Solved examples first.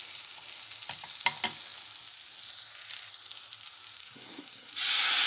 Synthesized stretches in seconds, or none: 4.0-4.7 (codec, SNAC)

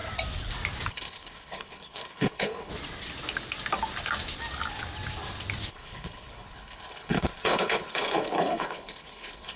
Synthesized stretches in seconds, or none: 0.9-2.7 (codec, HILCodec); 5.7-9.6

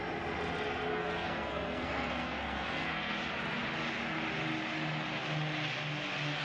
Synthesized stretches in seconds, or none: 0.9-3.2 (codec, SNAC)

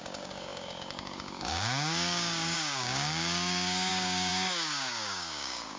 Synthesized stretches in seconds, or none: 0.0-5.8 (codec, DAC)

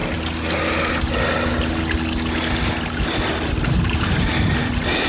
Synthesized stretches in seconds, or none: 3.1-5.1 (vocoder, BigVGAN v2)

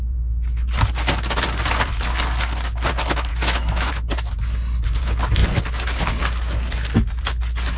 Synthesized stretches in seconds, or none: 3.3-3.9 (autoencoder, DAC-VAE)